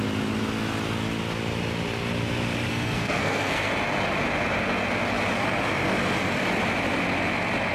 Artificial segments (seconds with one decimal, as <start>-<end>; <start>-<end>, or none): 2.7-3.7